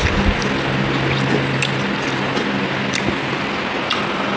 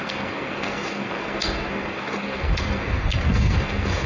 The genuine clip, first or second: first